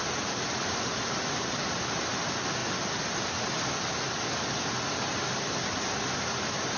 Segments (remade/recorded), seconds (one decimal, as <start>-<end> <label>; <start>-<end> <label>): 0.0-6.8 recorded